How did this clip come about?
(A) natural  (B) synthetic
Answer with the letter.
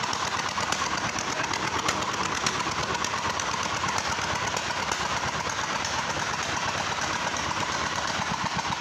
B